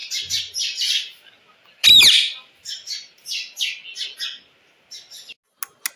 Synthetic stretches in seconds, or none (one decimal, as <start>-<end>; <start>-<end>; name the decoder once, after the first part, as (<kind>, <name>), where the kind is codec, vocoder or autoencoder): none